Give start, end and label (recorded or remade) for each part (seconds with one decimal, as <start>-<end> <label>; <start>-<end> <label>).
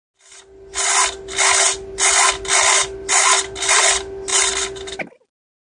0.0-5.7 recorded